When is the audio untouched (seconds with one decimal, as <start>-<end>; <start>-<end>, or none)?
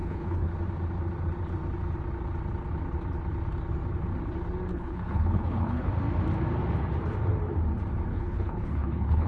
0.5-4.7; 5.9-8.1